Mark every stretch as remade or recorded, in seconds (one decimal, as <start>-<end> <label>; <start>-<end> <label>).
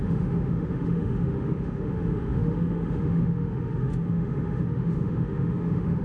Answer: 0.0-6.0 remade